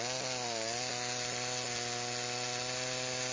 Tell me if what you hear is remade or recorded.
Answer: recorded